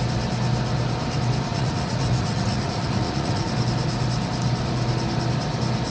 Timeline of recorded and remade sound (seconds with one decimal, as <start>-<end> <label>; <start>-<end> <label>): 0.0-1.5 recorded; 1.5-3.5 remade; 3.5-5.9 recorded